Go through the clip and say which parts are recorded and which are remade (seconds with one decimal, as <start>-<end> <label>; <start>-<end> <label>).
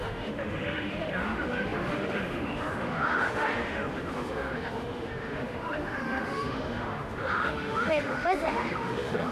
0.0-9.3 remade